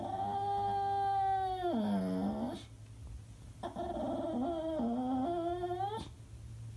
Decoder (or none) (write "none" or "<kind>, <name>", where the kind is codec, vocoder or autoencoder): none